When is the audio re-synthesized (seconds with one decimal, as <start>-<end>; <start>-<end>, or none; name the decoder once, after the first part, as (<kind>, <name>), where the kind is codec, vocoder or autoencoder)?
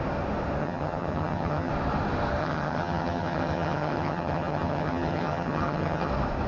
0.6-1.7 (vocoder, HiFi-GAN); 2.4-6.1